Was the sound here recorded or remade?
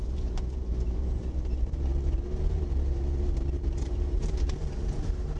remade